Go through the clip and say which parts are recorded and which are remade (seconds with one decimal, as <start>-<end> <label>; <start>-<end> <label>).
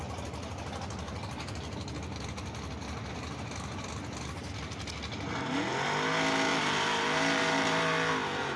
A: 0.0-6.5 recorded; 6.5-8.1 remade; 8.1-8.6 recorded